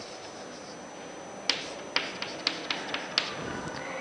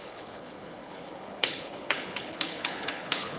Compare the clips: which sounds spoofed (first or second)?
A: second